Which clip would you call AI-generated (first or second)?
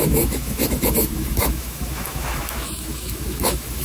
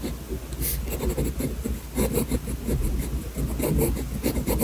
first